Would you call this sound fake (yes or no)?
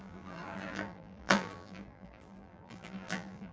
yes